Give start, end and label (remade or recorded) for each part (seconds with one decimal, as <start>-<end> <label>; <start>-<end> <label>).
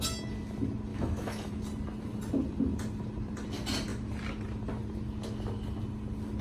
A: 0.0-0.9 recorded; 0.9-1.5 remade; 1.5-6.4 recorded